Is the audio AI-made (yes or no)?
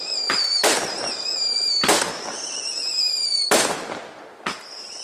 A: no